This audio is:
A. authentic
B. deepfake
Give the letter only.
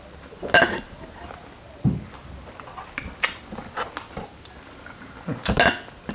A